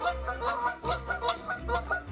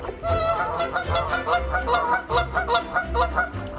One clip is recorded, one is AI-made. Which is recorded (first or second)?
second